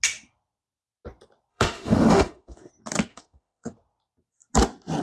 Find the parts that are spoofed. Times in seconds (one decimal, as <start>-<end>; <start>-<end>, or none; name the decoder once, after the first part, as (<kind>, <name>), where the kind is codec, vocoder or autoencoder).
1.5-2.7 (autoencoder, DAC-VAE); 3.1-3.7